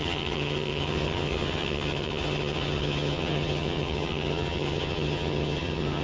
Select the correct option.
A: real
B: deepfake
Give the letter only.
B